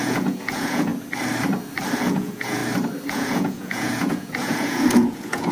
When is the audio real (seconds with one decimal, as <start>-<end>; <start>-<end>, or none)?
0.9-2.0; 2.6-3.1